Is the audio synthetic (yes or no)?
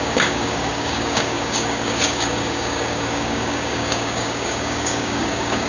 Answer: yes